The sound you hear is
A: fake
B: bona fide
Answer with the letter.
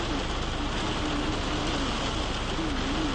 B